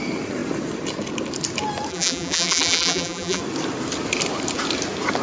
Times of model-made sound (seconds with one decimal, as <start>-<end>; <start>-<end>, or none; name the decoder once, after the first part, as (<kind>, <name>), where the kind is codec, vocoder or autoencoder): 1.9-3.4 (vocoder, BigVGAN v2)